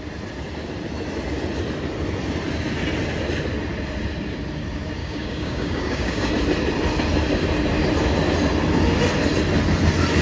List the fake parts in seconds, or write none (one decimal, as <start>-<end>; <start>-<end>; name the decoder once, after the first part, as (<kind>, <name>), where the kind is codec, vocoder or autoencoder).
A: 5.0-6.3 (codec, DAC)